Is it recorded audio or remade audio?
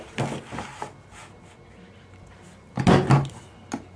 recorded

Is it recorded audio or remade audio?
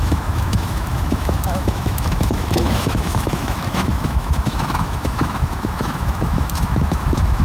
remade